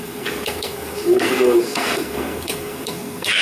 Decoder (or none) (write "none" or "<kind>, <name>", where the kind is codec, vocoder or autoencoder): codec, SNAC